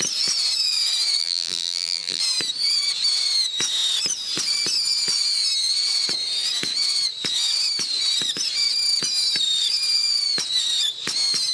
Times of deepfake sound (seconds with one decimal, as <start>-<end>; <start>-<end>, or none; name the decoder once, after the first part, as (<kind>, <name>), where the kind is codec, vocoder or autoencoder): 1.2-2.2 (vocoder, BigVGAN v2)